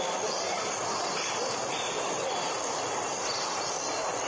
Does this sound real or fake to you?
real